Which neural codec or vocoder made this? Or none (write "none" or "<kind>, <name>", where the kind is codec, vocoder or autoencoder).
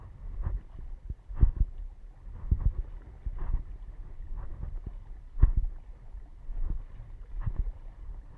none